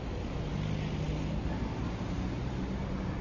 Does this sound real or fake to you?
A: real